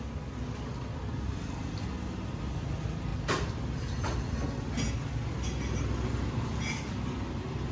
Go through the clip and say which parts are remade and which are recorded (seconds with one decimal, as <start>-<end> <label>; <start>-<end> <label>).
0.0-7.7 recorded